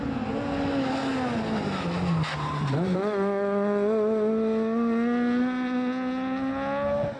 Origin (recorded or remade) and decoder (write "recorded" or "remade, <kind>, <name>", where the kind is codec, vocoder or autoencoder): recorded